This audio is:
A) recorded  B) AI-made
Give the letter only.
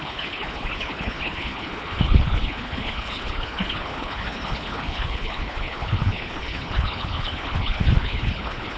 B